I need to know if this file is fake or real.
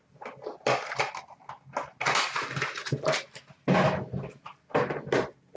real